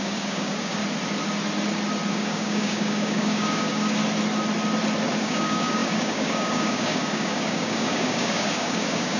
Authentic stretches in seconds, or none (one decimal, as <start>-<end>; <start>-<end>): 0.8-2.1; 4.0-5.2